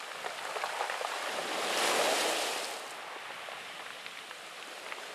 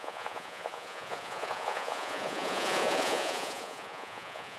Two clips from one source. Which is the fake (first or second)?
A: second